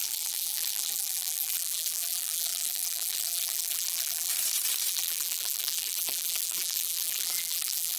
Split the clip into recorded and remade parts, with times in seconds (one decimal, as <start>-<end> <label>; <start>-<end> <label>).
0.0-4.3 remade; 4.3-4.9 recorded; 4.9-8.0 remade